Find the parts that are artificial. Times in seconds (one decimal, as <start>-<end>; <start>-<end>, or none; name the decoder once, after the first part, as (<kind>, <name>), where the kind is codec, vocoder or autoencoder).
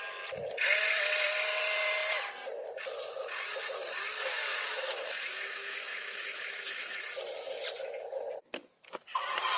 4.3-7.0 (autoencoder, DAC-VAE)